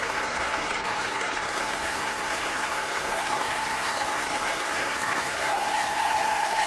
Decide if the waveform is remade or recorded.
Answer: remade